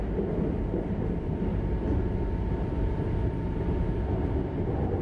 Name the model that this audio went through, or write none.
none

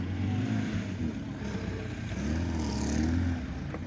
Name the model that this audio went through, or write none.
none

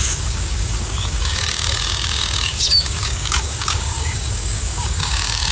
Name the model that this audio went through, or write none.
codec, DAC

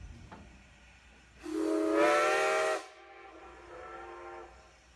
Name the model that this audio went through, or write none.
none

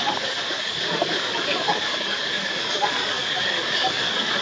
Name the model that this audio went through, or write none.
codec, DAC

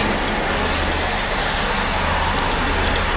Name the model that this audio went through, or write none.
none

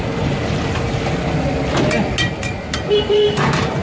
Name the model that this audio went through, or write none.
none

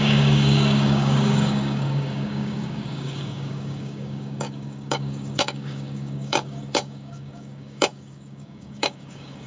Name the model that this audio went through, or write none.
codec, DAC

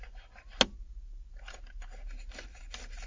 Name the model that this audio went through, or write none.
none